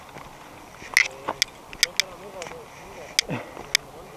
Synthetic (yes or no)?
no